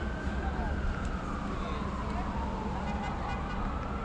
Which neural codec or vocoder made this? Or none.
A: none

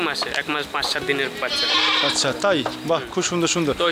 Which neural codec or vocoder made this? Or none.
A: none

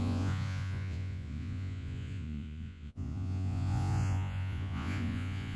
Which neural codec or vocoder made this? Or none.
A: vocoder, Vocos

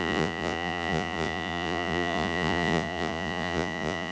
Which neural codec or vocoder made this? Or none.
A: vocoder, Vocos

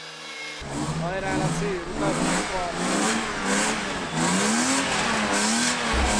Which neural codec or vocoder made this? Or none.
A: none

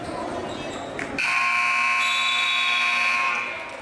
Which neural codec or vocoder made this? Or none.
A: none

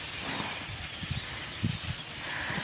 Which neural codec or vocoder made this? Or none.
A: none